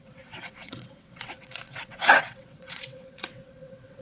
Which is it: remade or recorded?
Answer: remade